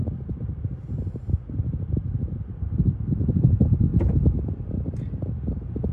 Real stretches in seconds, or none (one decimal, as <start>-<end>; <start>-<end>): 0.0-5.9